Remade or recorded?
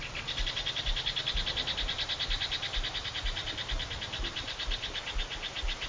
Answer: recorded